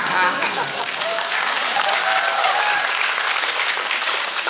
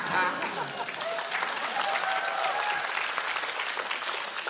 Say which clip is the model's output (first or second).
first